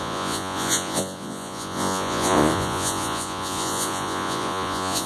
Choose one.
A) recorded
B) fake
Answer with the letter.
B